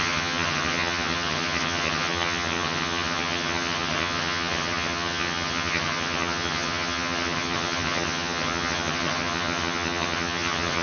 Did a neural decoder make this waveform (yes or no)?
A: yes